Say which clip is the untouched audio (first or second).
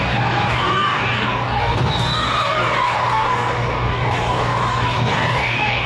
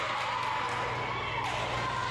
second